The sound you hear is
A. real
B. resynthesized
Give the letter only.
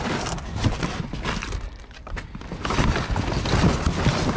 A